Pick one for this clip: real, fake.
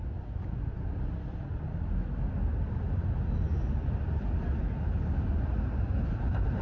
real